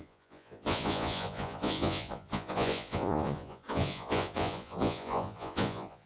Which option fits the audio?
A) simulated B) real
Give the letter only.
A